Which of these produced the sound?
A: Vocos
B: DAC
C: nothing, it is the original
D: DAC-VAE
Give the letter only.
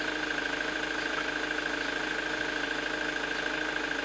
C